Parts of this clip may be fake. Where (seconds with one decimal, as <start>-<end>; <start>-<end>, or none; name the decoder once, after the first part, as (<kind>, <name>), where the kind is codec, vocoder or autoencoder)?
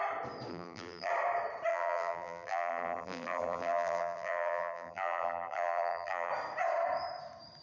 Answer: 0.5-1.1 (vocoder, BigVGAN v2); 1.7-6.3